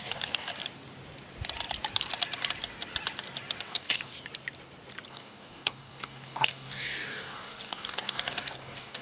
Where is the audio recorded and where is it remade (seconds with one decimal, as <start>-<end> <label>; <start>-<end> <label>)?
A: 0.0-0.5 remade; 0.5-3.6 recorded; 3.6-4.1 remade; 4.1-5.1 recorded; 5.1-9.0 remade